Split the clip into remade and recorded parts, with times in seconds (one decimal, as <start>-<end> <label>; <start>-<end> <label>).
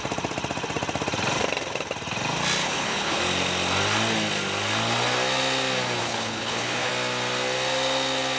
0.0-2.6 recorded; 2.6-3.2 remade; 3.2-6.0 recorded; 6.0-6.9 remade; 6.9-8.4 recorded